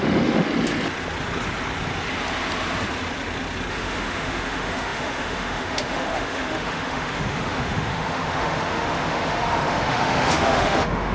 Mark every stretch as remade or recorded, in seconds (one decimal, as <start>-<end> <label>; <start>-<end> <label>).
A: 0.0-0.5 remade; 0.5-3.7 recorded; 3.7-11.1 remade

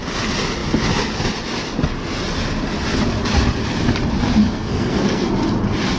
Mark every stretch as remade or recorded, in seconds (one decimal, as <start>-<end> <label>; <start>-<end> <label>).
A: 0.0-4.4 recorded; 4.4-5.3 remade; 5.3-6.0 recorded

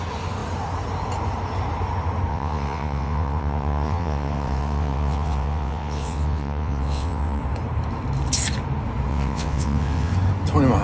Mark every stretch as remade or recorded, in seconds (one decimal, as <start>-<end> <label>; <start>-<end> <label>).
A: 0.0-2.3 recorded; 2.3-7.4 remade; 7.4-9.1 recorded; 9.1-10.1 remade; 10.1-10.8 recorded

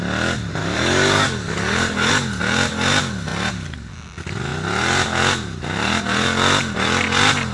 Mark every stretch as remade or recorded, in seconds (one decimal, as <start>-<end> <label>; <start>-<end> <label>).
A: 0.0-0.6 recorded; 0.6-2.1 remade; 2.1-7.5 recorded

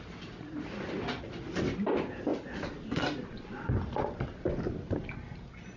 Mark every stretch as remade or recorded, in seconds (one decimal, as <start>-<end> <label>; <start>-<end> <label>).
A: 0.0-5.8 recorded

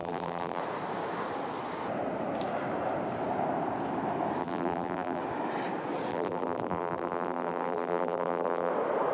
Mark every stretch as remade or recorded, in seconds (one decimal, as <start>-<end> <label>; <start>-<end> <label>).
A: 0.0-0.6 remade; 0.6-4.4 recorded; 4.4-5.2 remade; 5.2-6.1 recorded; 6.1-8.7 remade; 8.7-9.1 recorded

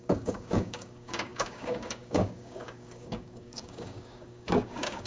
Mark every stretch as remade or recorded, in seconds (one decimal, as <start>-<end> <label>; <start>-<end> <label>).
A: 0.0-5.1 remade

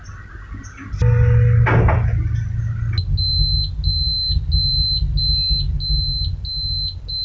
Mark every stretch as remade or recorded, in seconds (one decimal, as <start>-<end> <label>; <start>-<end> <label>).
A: 0.0-7.2 recorded